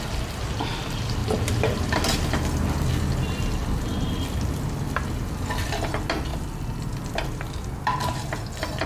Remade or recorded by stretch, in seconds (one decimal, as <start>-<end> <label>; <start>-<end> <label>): 0.0-8.9 recorded